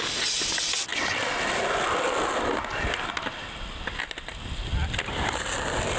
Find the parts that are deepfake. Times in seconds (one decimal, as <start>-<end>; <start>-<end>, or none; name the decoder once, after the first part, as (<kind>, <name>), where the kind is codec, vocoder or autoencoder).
none